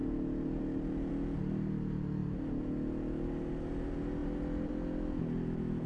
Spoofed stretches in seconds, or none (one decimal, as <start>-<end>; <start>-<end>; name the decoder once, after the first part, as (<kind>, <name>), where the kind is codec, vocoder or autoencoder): none